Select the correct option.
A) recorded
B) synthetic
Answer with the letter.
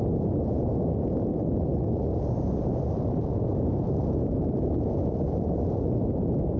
A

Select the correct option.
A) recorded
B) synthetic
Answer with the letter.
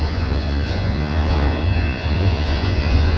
B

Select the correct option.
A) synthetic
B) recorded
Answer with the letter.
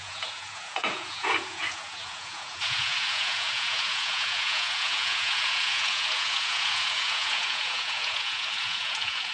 A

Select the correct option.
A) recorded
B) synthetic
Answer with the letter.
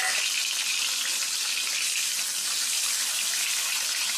A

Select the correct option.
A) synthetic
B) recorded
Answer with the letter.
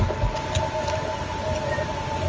B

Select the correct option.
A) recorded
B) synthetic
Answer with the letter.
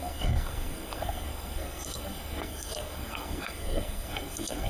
B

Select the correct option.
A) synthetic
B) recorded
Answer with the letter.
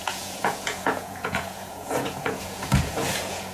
A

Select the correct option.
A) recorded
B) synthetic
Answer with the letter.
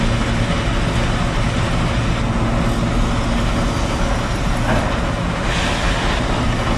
A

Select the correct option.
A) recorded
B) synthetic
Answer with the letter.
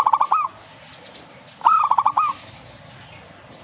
A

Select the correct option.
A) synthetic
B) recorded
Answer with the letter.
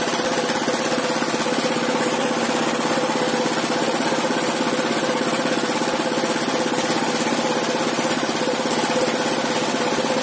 B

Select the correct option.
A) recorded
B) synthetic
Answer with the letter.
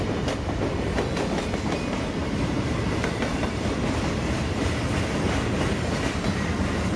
A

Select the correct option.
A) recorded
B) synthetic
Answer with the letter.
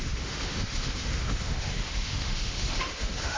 B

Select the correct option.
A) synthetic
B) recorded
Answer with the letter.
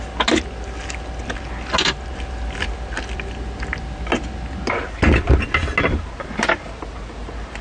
B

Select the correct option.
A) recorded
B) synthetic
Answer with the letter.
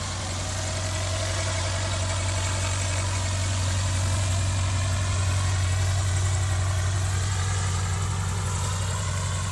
B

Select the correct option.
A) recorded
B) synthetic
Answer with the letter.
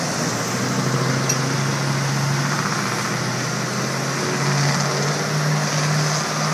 A